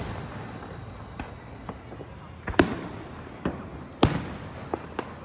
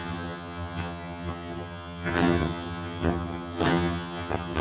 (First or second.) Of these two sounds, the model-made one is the second